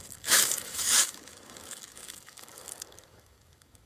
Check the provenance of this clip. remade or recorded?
remade